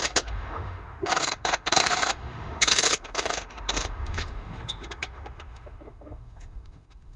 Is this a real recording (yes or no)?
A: no